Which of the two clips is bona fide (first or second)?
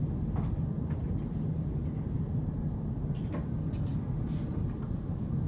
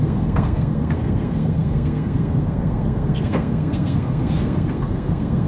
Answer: first